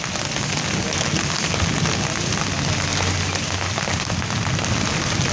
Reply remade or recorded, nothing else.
recorded